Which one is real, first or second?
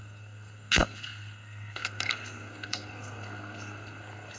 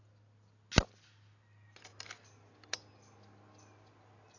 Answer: second